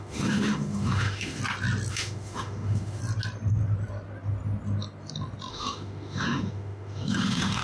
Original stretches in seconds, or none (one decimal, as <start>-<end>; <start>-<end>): 1.4-1.9; 3.0-5.5